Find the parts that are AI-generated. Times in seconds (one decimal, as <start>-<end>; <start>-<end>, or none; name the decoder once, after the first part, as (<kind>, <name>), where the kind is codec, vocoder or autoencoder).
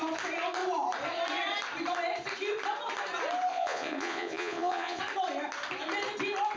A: 3.5-5.0 (vocoder, Vocos)